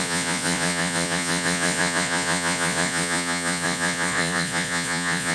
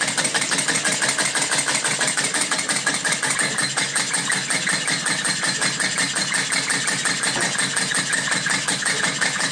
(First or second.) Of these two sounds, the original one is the second